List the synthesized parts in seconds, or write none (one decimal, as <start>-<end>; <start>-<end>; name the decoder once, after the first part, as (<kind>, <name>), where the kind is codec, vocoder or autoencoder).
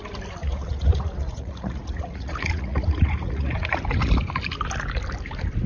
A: 0.4-3.8 (vocoder, Vocos)